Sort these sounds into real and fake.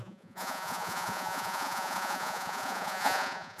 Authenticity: fake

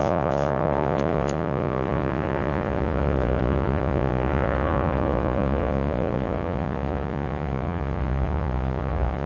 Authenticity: fake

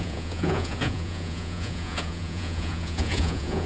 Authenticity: fake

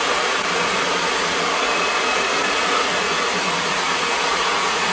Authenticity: fake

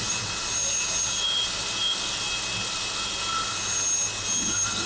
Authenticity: real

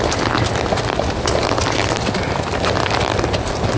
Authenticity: real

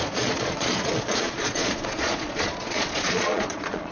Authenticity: fake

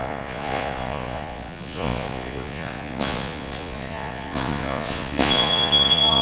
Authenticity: fake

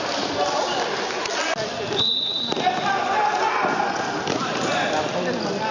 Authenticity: real